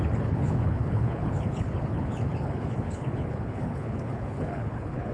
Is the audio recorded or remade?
remade